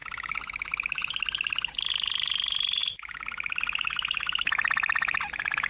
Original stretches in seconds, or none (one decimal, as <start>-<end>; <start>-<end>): 0.0-5.7